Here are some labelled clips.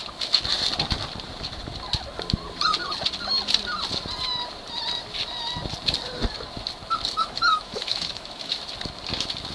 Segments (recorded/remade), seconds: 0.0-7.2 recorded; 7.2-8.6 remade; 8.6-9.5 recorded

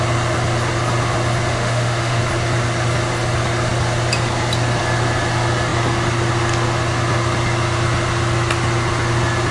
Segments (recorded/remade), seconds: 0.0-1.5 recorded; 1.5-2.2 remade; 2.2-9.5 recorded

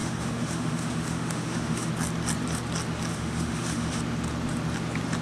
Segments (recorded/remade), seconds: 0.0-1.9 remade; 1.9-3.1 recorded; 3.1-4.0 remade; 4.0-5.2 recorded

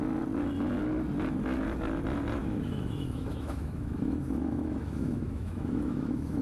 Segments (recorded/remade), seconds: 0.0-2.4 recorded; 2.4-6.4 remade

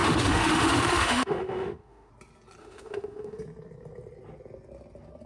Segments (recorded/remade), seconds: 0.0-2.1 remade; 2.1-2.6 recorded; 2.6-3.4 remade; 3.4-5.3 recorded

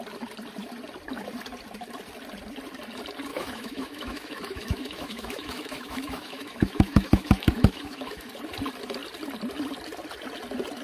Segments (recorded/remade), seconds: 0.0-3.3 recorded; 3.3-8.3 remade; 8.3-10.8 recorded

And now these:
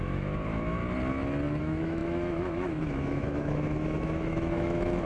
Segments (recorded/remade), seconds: 0.0-0.8 remade; 0.8-1.6 recorded; 1.6-5.1 remade